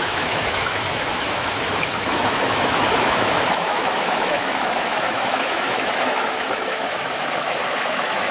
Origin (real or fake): fake